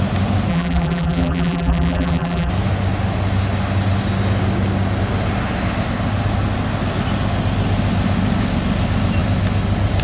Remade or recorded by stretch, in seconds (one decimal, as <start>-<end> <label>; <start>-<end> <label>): 0.0-0.5 recorded; 0.5-2.5 remade; 2.5-10.0 recorded